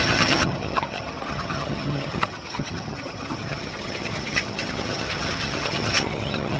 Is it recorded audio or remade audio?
remade